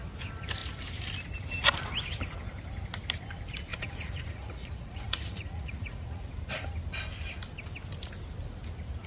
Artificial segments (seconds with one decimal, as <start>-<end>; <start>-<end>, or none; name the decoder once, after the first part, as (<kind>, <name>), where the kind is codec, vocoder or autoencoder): 3.7-6.3 (vocoder, Vocos)